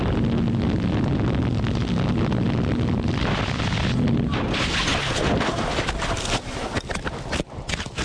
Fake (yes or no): no